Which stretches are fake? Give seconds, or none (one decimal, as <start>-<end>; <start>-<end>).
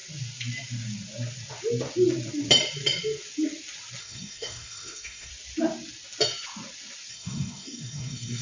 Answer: 4.0-5.3; 7.1-8.4